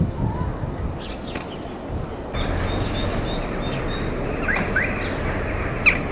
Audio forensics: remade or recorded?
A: recorded